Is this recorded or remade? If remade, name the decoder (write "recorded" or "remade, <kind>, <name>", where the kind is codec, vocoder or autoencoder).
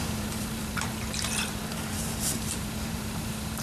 remade, vocoder, BigVGAN v2